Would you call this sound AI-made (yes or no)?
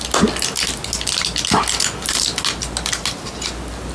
no